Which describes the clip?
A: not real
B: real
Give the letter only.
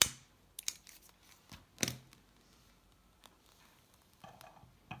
B